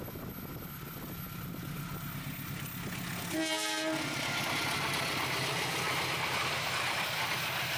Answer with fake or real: real